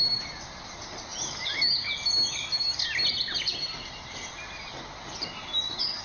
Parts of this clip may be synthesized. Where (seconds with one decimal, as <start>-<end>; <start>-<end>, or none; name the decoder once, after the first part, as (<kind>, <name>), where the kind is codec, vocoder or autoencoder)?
none